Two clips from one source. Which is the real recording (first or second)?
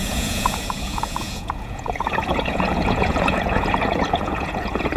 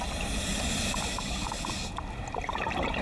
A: second